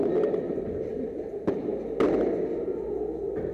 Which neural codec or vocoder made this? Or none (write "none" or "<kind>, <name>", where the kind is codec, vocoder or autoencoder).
none